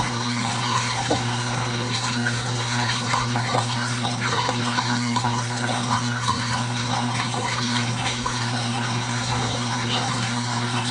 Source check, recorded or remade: remade